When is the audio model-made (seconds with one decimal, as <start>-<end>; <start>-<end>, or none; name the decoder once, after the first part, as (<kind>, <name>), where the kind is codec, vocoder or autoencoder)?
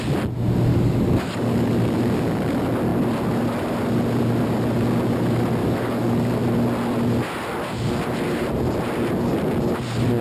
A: 0.7-1.7 (codec, DAC); 5.6-6.4